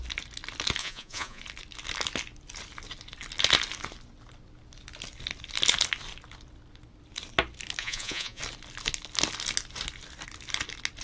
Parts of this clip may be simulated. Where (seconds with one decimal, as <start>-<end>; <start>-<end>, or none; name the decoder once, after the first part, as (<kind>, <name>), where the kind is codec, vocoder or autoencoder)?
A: 0.8-1.4 (vocoder, Vocos); 7.8-8.4